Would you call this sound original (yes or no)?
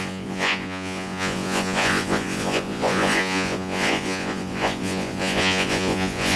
no